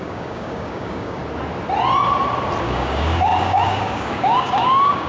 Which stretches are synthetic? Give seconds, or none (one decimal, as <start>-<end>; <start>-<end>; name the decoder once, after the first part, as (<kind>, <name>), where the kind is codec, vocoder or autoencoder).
0.0-1.2 (codec, DAC); 2.6-5.1